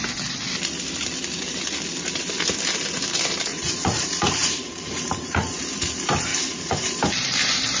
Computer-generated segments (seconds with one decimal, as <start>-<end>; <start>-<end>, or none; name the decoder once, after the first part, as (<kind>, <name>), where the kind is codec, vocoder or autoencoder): 3.5-5.6 (vocoder, Vocos); 6.3-7.0